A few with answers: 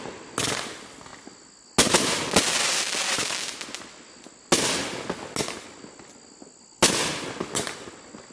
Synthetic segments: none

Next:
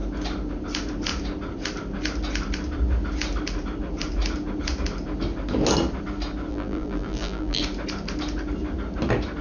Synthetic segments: 6.5-7.6 (vocoder, BigVGAN v2)

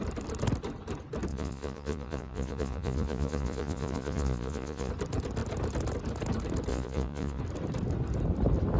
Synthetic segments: 1.3-4.9 (vocoder, Vocos); 6.7-7.4

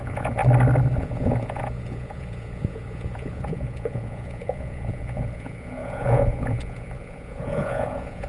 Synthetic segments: 0.0-0.4 (vocoder, Vocos); 1.0-8.3

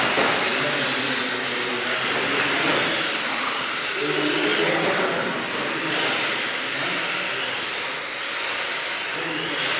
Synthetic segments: none